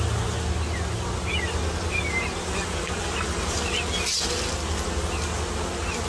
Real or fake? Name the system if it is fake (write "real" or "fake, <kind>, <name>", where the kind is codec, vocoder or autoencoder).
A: real